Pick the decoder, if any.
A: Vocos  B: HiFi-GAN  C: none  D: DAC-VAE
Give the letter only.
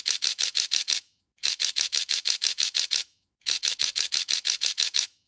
D